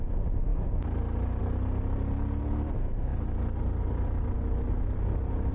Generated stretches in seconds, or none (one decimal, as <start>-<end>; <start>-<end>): none